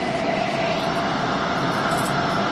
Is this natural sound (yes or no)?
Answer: yes